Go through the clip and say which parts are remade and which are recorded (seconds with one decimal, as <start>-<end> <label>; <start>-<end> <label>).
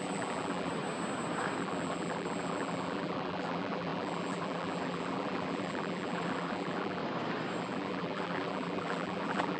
0.0-0.7 remade; 0.7-1.6 recorded; 1.6-7.0 remade; 7.0-7.6 recorded; 7.6-9.6 remade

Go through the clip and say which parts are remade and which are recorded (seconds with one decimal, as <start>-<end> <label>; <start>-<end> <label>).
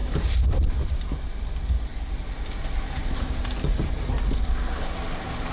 0.0-1.0 remade; 1.0-5.5 recorded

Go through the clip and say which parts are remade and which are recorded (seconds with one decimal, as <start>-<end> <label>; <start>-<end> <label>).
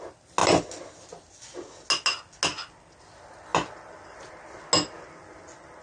0.0-5.8 recorded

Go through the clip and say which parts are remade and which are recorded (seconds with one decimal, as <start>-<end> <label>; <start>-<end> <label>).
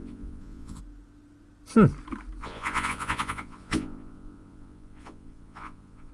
0.0-0.8 remade; 0.8-2.4 recorded; 2.4-6.1 remade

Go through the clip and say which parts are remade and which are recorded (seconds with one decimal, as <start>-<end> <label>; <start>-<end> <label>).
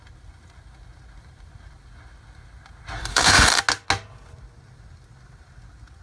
0.0-3.1 recorded; 3.1-3.6 remade; 3.6-6.0 recorded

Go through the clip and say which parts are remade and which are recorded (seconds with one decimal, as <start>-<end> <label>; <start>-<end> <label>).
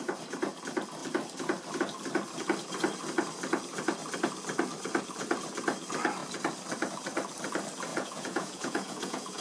0.0-7.9 recorded; 7.9-9.4 remade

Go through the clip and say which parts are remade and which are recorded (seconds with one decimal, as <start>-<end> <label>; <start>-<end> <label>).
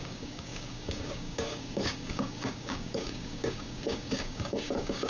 0.0-5.1 remade